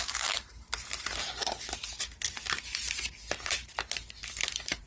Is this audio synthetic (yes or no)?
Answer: yes